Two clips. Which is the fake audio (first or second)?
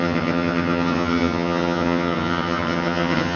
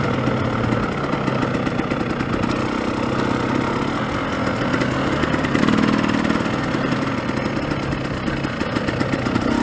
first